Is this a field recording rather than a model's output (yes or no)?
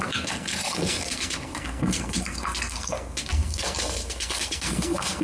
no